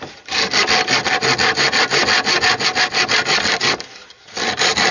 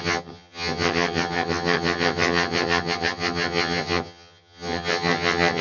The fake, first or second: second